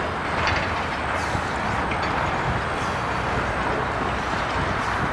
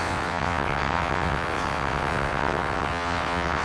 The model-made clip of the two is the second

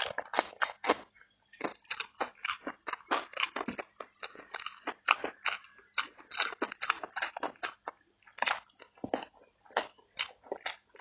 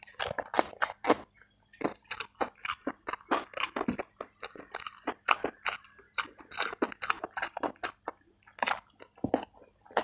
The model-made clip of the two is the second